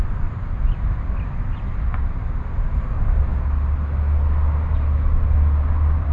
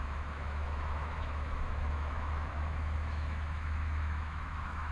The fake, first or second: second